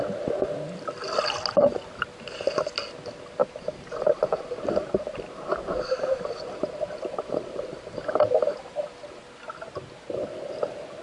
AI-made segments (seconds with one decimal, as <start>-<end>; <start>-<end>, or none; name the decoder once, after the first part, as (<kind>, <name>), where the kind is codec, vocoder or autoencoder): 3.4-8.1 (vocoder, BigVGAN v2)